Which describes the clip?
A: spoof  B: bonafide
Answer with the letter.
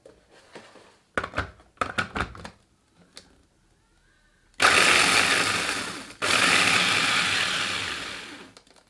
B